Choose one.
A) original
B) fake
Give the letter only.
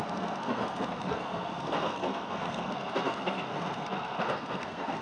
B